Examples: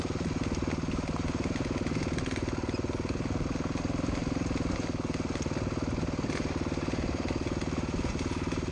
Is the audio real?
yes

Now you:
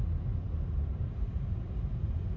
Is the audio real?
no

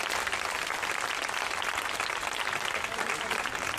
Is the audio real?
yes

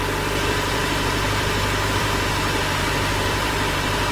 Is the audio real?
no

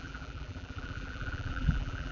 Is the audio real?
no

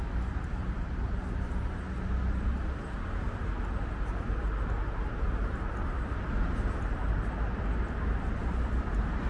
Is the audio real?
yes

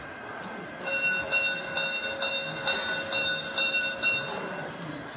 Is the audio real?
yes